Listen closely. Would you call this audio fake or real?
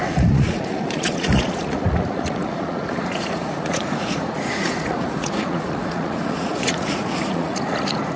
fake